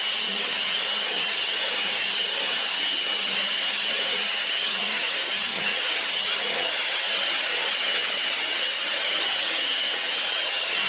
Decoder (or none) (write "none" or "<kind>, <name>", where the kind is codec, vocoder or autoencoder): vocoder, HiFi-GAN